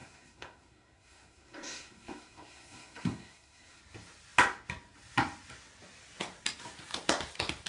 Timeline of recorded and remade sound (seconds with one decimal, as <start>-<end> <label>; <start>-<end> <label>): 0.0-3.8 remade; 3.8-7.7 recorded